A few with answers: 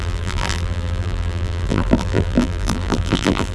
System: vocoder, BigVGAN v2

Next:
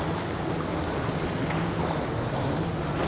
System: none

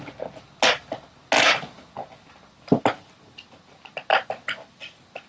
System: none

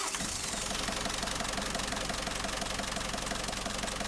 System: none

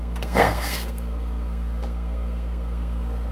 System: codec, SNAC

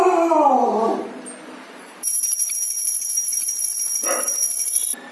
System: vocoder, BigVGAN v2